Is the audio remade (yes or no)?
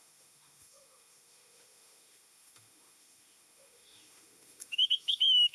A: yes